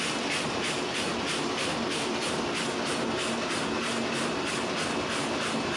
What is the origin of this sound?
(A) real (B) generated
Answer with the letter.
A